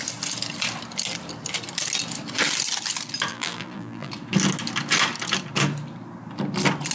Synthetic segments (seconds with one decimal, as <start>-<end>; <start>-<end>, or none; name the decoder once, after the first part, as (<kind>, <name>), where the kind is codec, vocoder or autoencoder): 3.3-4.1 (vocoder, BigVGAN v2)